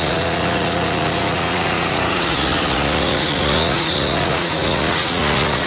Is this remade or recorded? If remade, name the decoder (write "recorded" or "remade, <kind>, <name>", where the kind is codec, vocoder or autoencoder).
remade, vocoder, Vocos